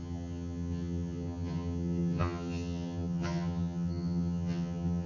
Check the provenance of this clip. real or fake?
fake